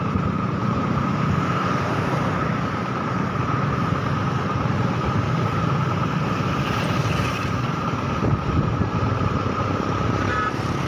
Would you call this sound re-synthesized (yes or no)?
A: yes